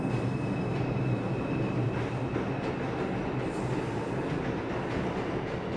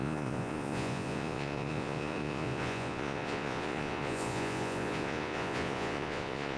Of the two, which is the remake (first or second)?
second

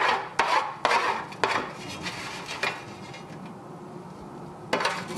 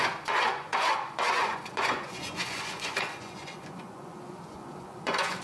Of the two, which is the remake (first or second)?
second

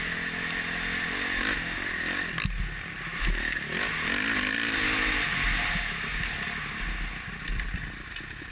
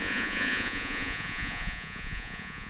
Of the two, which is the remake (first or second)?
second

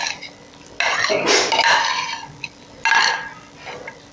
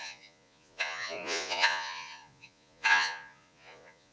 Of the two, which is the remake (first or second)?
second